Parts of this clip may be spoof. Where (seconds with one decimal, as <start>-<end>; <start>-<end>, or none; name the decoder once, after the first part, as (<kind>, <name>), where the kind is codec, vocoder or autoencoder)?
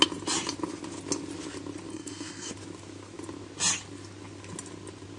1.9-2.5 (codec, SNAC)